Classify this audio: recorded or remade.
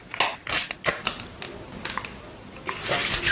recorded